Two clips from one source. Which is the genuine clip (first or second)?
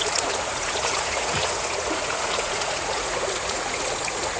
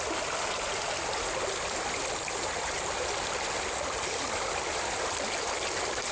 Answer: second